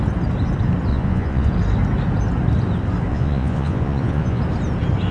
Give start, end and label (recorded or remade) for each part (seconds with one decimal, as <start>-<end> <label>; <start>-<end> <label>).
0.0-0.9 recorded; 0.9-1.5 remade; 1.5-3.1 recorded; 3.1-4.4 remade; 4.4-5.1 recorded